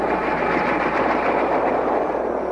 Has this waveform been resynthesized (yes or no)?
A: yes